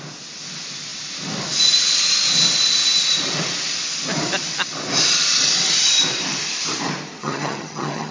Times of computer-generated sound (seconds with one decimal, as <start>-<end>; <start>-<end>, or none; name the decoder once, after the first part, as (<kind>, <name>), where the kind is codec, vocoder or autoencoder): 7.2-8.1 (vocoder, HiFi-GAN)